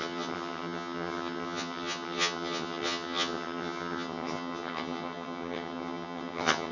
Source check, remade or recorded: remade